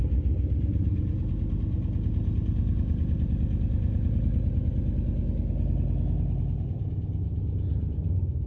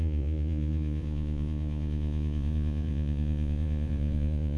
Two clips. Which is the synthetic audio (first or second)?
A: second